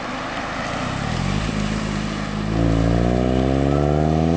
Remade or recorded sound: recorded